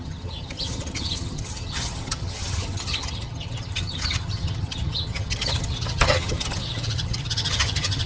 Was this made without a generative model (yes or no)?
no